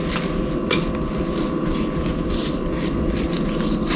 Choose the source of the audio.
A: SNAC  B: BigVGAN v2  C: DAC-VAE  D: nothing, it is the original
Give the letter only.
D